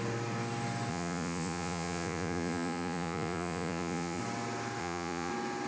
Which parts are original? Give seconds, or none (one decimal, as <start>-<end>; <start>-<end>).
0.0-0.9; 4.2-4.8; 5.3-5.7